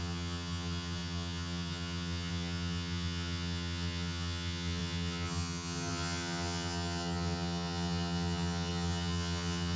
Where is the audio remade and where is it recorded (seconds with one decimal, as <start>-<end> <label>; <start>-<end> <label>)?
0.0-9.8 remade